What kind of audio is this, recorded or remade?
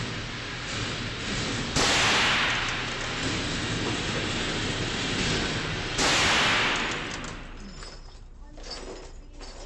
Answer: recorded